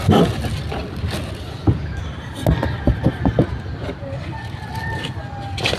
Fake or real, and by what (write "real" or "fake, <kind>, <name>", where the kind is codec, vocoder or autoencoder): real